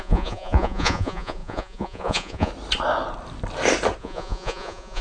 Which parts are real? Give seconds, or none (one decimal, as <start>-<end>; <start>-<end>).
2.5-4.0